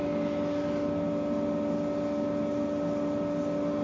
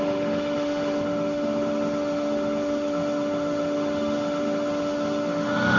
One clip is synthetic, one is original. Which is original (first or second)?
first